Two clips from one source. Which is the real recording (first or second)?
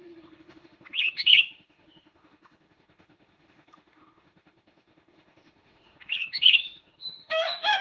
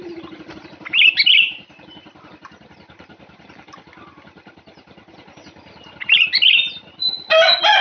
second